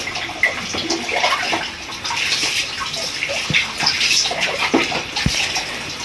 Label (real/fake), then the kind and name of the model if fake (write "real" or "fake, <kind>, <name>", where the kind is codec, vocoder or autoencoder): real